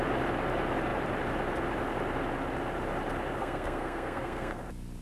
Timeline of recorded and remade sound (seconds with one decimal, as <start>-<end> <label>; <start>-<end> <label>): 0.0-3.4 recorded; 3.4-4.6 remade; 4.6-5.0 recorded